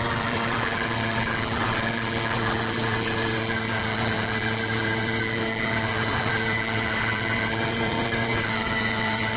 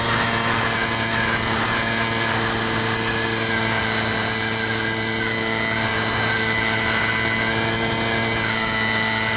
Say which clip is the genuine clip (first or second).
second